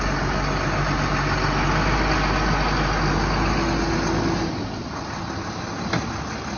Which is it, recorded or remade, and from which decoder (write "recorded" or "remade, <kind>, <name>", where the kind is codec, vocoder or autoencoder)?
recorded